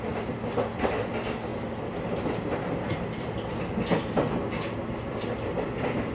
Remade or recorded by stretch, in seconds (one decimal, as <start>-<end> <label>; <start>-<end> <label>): 0.0-1.5 recorded; 1.5-2.9 remade; 2.9-6.1 recorded